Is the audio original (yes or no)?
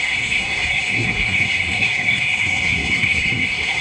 no